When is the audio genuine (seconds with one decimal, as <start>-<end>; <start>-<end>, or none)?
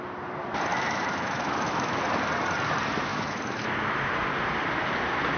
0.0-0.7; 2.0-3.1; 4.1-5.4